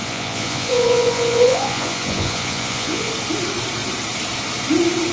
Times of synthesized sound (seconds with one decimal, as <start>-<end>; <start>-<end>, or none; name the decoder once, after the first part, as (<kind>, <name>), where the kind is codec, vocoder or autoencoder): 0.0-3.1 (vocoder, Vocos)